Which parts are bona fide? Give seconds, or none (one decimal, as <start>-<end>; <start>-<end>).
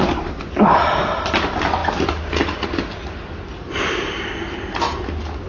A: 0.0-5.5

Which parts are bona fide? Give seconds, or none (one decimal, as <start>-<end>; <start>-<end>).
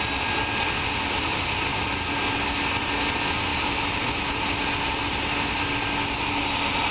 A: 0.0-6.9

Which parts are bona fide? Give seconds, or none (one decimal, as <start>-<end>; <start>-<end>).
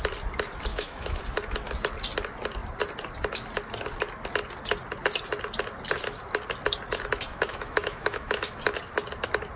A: 0.0-0.7; 1.2-7.3; 8.6-9.6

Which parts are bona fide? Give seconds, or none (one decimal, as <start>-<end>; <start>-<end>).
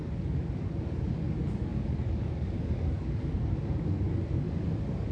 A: none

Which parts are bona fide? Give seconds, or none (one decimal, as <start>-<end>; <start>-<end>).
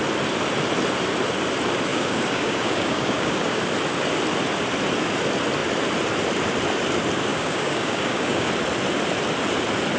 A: 0.0-1.9; 3.6-7.3; 8.5-10.0